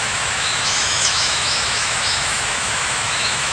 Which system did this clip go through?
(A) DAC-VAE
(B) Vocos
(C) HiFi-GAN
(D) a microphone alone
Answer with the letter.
A